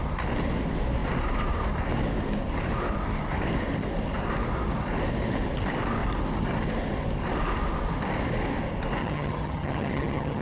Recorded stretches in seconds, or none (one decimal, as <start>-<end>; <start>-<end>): 0.0-9.0